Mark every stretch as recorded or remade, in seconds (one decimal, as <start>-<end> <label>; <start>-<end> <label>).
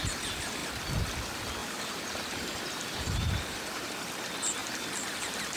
0.0-1.6 recorded; 1.6-3.9 remade; 3.9-4.6 recorded; 4.6-5.6 remade